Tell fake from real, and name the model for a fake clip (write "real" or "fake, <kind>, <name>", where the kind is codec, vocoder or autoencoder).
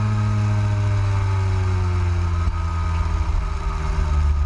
real